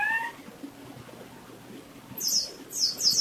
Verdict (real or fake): real